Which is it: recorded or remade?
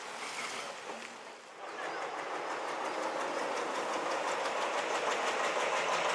recorded